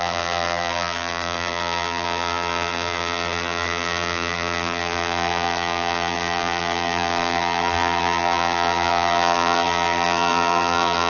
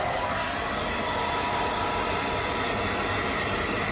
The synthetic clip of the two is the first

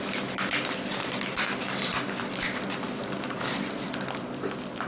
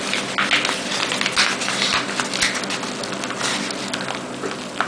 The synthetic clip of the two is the first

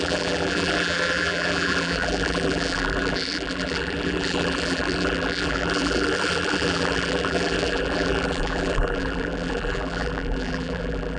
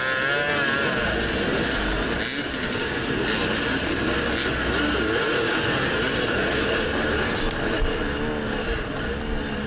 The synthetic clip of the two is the first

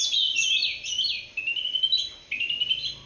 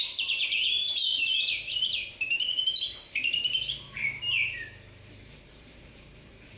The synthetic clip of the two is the second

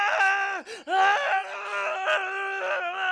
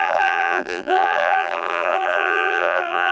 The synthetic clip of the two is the second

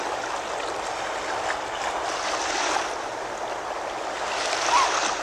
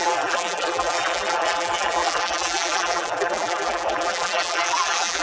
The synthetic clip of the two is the second